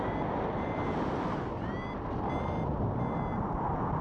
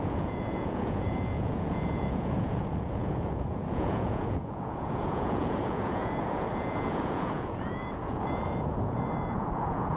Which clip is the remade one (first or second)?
second